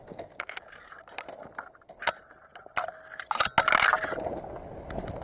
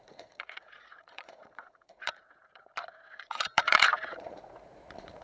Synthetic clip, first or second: second